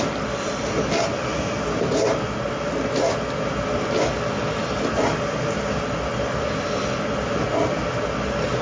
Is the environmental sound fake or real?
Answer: real